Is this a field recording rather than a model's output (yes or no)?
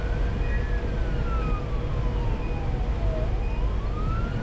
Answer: yes